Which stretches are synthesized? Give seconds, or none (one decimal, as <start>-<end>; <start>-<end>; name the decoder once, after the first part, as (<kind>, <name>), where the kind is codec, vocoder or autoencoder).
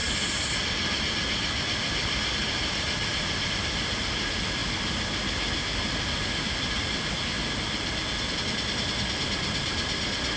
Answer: none